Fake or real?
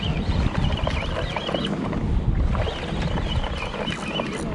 real